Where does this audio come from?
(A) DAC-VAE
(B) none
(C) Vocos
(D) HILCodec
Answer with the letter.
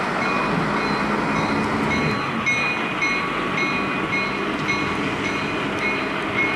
B